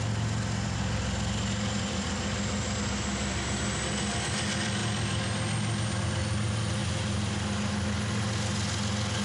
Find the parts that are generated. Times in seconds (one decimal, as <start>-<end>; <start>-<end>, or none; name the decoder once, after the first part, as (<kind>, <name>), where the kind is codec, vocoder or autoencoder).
none